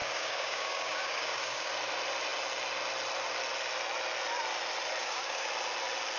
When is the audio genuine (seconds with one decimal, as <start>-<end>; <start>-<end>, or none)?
1.7-5.0; 5.5-6.2